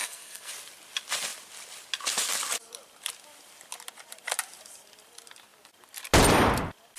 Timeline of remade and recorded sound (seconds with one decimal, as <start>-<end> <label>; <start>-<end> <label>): 0.0-0.5 remade; 0.5-7.0 recorded